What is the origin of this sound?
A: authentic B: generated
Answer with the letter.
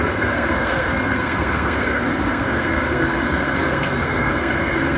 B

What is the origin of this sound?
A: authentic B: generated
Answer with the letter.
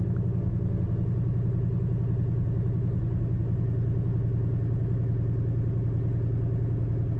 A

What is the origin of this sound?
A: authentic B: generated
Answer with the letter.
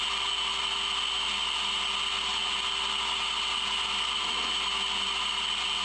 A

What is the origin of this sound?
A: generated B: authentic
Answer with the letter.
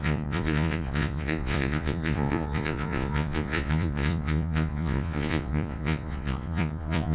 A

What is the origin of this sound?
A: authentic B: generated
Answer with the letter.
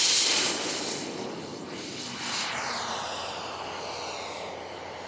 A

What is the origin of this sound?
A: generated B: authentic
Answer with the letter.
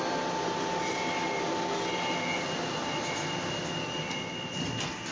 B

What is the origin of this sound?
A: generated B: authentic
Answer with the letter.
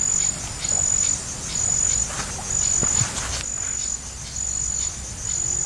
B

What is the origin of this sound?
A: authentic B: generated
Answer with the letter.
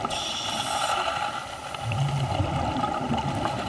A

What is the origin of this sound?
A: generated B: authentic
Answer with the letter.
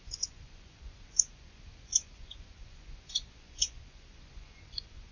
A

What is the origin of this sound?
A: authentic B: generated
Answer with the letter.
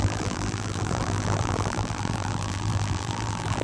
B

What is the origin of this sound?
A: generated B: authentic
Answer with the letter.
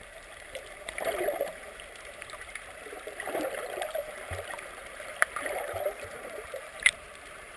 A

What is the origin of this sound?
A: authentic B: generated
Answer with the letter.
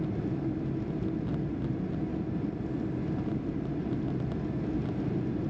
A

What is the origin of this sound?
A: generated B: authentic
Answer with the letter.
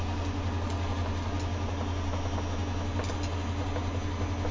B